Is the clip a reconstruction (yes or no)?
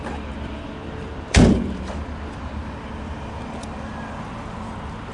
yes